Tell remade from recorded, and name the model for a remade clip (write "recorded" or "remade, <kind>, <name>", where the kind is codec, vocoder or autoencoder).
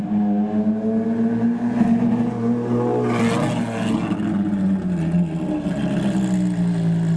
recorded